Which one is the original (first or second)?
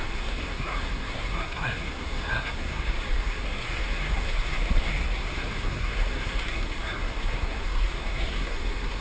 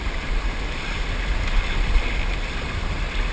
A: second